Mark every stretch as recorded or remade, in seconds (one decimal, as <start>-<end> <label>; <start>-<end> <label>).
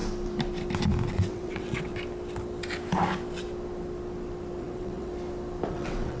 0.0-1.1 recorded; 1.1-1.9 remade; 1.9-4.6 recorded; 4.6-5.1 remade; 5.1-5.7 recorded; 5.7-6.2 remade